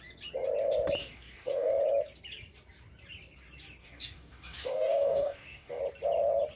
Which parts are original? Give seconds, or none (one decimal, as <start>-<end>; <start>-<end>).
0.0-1.0; 1.8-3.8; 5.8-6.6